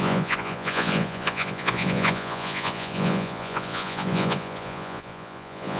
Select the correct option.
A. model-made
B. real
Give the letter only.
A